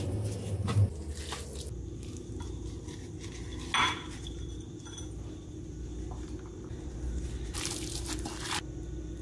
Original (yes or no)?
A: yes